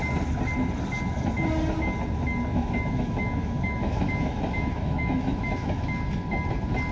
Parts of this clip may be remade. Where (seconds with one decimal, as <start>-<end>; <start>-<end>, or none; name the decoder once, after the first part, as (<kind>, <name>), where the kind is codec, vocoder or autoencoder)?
2.5-5.9 (autoencoder, DAC-VAE)